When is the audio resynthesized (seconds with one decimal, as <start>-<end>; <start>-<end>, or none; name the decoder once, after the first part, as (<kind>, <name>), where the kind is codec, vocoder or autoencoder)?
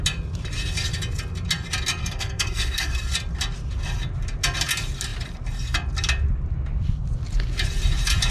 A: 2.0-3.0 (codec, SNAC)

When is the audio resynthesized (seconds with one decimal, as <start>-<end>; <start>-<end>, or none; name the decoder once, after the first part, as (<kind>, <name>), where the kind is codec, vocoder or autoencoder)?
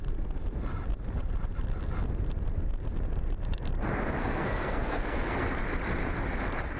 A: 4.2-5.6 (codec, SNAC)